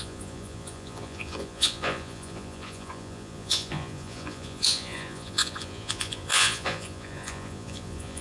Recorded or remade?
remade